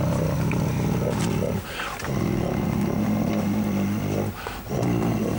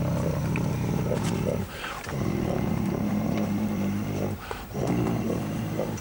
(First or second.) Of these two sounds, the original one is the first